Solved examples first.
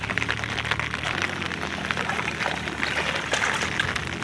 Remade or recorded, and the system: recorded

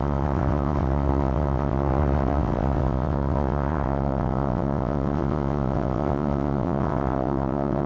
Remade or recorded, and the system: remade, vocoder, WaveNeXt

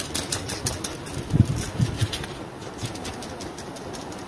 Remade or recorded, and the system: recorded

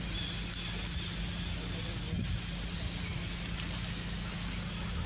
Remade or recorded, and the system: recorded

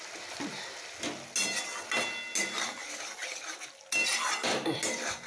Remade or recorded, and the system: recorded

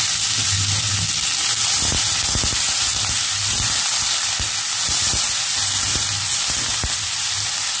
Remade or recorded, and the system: recorded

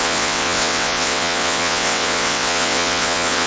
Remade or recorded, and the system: remade, vocoder, WaveNeXt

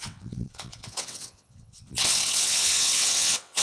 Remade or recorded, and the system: remade, vocoder, WaveNeXt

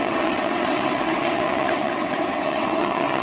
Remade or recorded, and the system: remade, vocoder, WaveNeXt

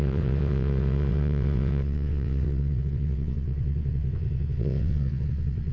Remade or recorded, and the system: remade, vocoder, WaveNeXt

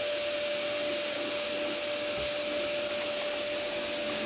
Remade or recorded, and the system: recorded